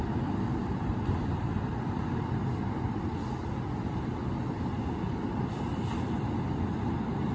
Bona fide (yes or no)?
yes